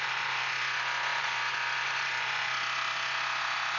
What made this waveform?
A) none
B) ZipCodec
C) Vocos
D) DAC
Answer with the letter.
C